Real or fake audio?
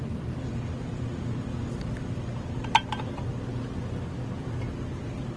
real